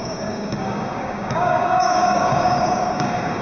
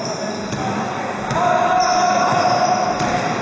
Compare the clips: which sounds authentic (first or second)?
second